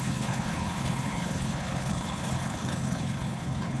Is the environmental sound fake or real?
fake